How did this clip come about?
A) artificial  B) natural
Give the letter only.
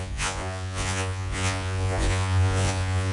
A